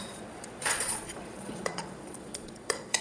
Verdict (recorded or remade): remade